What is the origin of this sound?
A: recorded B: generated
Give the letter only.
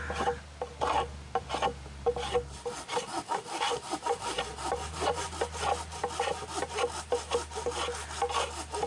A